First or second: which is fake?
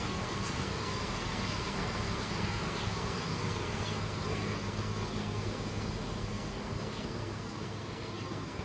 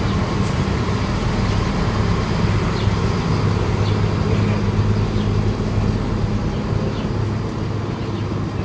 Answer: first